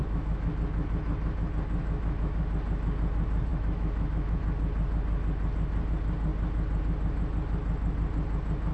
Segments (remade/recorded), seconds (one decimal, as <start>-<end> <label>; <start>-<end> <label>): 0.0-0.5 remade; 0.5-1.8 recorded; 1.8-2.4 remade; 2.4-3.5 recorded; 3.5-4.4 remade; 4.4-8.7 recorded